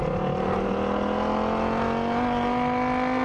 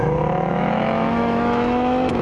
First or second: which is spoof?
second